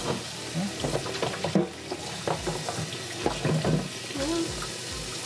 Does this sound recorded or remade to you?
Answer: recorded